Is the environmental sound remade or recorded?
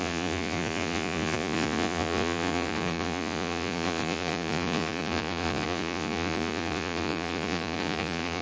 remade